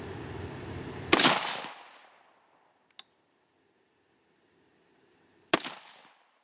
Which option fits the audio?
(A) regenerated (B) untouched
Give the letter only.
B